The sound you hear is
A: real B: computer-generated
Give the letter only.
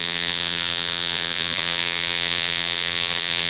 B